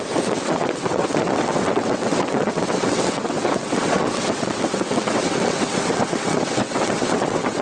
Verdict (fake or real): fake